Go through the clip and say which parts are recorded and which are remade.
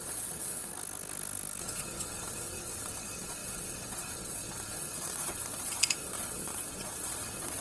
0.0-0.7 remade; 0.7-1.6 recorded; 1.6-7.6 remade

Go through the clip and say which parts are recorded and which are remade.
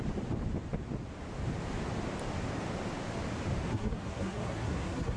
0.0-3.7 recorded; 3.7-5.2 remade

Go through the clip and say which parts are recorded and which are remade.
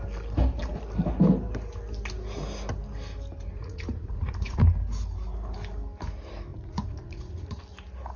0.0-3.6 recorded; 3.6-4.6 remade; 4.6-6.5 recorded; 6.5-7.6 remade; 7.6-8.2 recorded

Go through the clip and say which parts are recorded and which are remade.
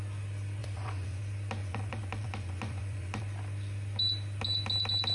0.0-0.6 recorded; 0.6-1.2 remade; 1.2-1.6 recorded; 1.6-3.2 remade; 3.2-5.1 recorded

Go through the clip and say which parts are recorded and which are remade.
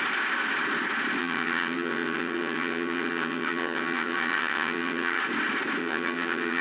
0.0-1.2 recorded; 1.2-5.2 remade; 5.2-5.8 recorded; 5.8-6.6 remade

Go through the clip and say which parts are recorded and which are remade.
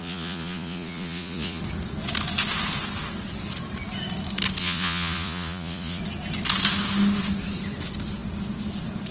0.0-1.6 remade; 1.6-4.6 recorded; 4.6-6.0 remade; 6.0-9.1 recorded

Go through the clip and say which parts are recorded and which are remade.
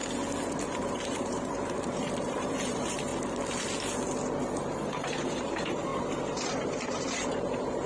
0.0-0.5 recorded; 0.5-3.1 remade; 3.1-4.4 recorded; 4.4-7.9 remade